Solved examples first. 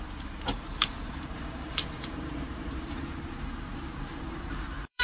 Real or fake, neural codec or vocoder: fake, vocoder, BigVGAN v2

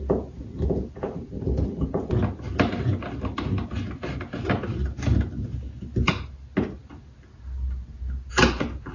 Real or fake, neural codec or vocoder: real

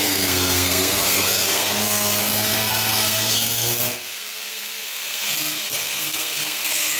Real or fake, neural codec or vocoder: fake, codec, SNAC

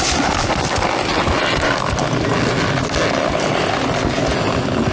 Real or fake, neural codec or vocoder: real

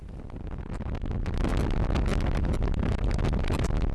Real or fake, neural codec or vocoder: real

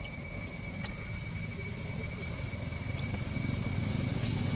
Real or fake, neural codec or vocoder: real